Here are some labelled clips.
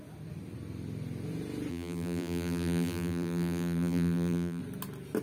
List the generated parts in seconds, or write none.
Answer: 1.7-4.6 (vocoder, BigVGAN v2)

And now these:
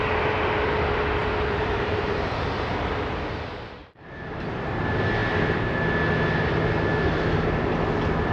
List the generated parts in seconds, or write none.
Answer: 1.2-2.5 (vocoder, BigVGAN v2); 3.8-4.7

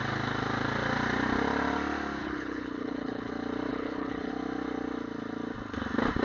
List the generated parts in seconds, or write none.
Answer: 2.2-3.3 (codec, HILCodec); 3.7-4.3